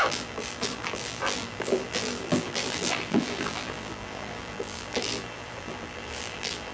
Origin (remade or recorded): remade